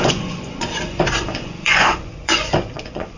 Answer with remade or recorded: remade